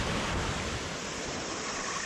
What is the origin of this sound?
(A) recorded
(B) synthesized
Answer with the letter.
A